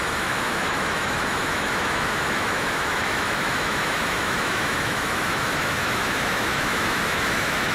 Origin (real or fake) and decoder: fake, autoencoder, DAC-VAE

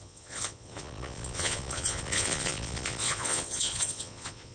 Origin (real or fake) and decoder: fake, vocoder, Vocos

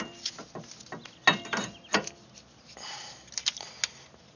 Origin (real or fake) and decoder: real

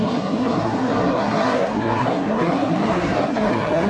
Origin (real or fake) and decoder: fake, codec, SNAC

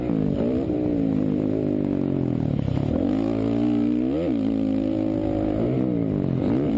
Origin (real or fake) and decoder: real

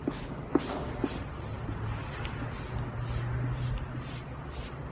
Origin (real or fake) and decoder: real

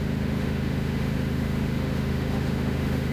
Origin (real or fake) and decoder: fake, autoencoder, DAC-VAE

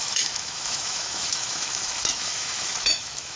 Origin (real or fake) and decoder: fake, autoencoder, DAC-VAE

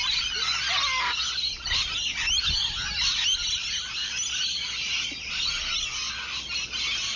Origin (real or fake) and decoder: real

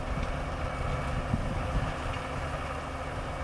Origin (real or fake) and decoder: real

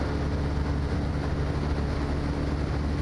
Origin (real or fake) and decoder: real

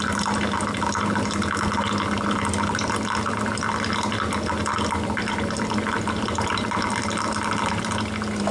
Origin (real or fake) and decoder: real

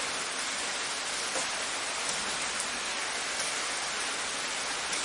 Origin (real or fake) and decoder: real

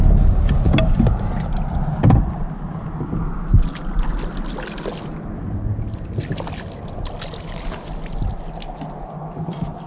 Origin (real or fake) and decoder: real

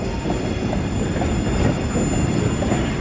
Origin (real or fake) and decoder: real